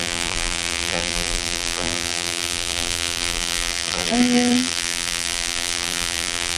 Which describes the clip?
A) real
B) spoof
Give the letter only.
B